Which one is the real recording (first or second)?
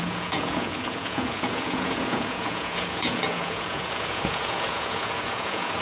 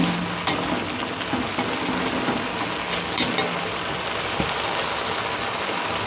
second